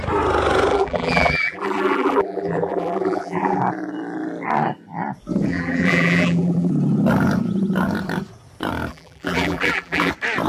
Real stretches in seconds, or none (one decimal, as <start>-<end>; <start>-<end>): 0.0-0.7; 3.6-5.5; 6.7-8.9; 10.1-10.5